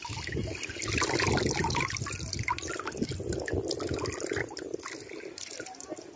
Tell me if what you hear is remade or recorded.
recorded